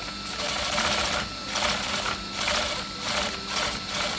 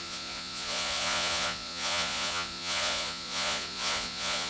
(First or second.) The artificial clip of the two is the second